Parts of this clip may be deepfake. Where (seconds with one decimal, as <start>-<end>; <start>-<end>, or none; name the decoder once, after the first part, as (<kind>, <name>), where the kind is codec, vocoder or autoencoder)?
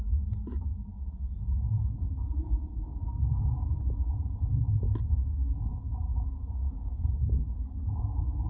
none